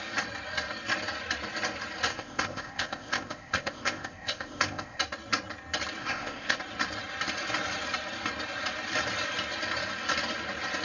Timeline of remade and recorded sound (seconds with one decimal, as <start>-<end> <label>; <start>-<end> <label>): 0.0-2.1 recorded; 2.1-5.0 remade; 5.0-6.0 recorded; 6.0-6.6 remade; 6.6-10.8 recorded